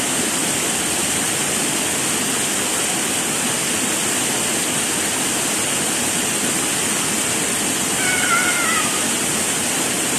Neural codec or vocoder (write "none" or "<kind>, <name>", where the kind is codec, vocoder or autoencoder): none